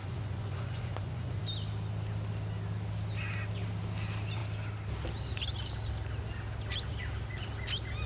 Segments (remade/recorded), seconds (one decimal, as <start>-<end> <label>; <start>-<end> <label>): 0.0-1.4 remade; 1.4-8.1 recorded